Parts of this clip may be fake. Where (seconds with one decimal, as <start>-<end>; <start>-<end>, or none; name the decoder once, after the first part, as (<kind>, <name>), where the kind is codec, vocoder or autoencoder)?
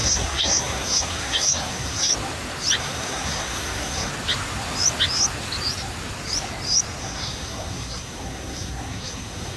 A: 0.0-2.1 (codec, SNAC); 2.8-4.1; 7.0-9.6